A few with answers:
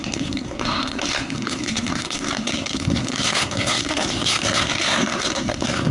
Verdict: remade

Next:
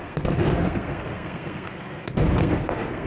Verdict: remade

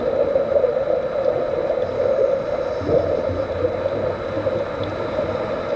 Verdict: recorded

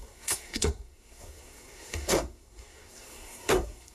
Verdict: remade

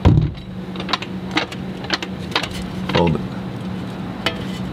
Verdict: recorded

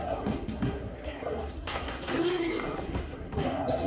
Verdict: remade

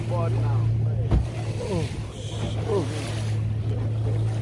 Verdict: recorded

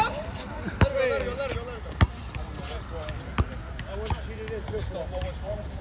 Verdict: recorded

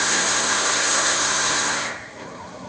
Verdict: remade